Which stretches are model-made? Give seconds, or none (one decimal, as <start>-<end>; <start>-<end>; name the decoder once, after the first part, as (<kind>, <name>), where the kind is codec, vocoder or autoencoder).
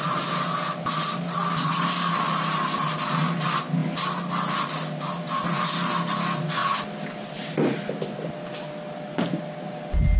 none